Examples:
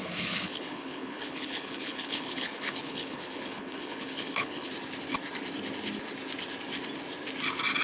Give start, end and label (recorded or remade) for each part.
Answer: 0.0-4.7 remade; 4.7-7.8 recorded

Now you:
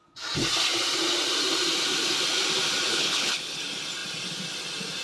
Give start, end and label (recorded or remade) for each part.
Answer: 0.0-2.9 recorded; 2.9-3.6 remade; 3.6-5.0 recorded

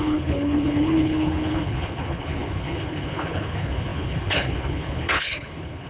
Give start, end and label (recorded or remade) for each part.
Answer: 0.0-5.9 remade

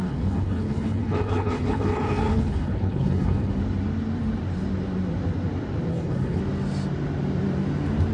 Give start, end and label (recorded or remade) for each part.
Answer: 0.0-3.5 remade; 3.5-5.9 recorded; 5.9-6.4 remade; 6.4-8.1 recorded

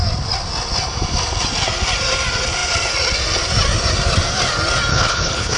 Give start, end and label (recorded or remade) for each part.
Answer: 0.0-4.9 recorded; 4.9-5.6 remade

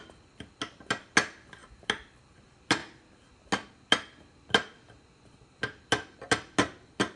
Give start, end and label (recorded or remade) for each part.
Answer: 0.0-7.2 recorded

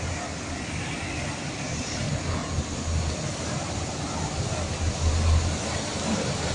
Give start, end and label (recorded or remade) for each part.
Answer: 0.0-6.5 recorded

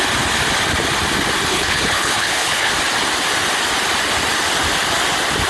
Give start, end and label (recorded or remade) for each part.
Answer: 0.0-1.5 recorded; 1.5-2.7 remade; 2.7-5.5 recorded